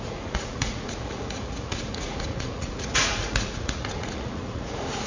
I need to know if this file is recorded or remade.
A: remade